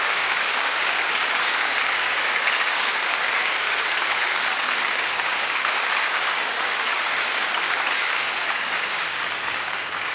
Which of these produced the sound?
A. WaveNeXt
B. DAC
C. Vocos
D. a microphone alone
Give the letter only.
B